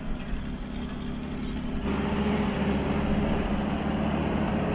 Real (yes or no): yes